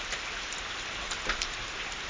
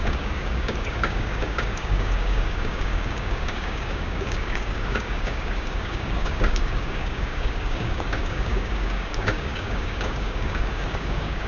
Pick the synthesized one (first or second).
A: second